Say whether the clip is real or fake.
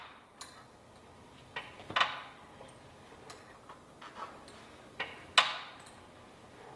real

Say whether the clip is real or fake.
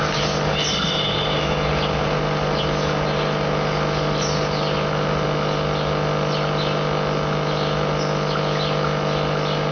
real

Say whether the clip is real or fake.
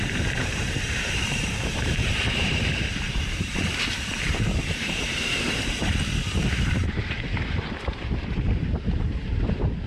fake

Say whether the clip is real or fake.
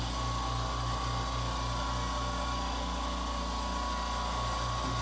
real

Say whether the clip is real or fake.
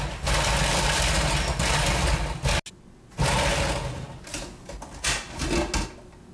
real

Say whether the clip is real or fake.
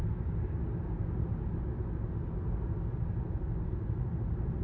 real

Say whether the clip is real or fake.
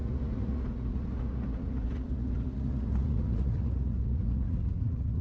fake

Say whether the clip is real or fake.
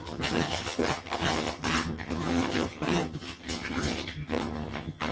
fake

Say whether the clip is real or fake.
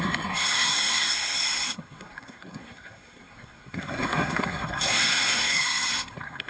fake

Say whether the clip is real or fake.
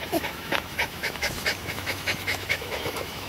fake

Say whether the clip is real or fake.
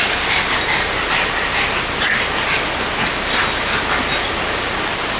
real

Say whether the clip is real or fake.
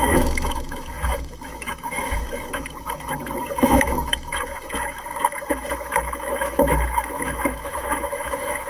fake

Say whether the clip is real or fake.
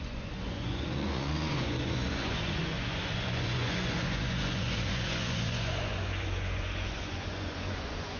fake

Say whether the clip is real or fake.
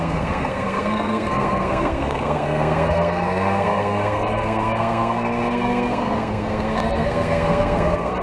fake